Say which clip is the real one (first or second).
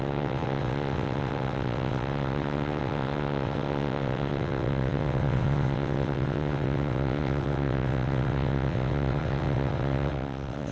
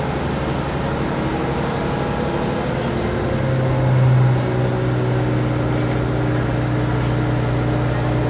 second